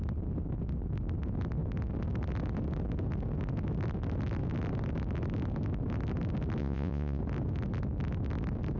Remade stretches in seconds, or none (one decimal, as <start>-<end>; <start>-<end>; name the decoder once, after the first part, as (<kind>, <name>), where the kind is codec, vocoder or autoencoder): 6.6-7.2 (vocoder, Vocos)